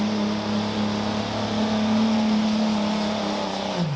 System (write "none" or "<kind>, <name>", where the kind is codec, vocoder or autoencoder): none